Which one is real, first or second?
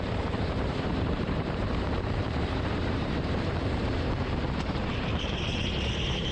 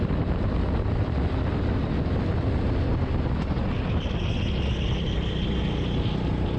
second